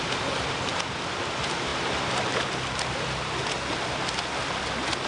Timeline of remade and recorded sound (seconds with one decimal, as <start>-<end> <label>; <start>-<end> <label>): 0.0-5.1 recorded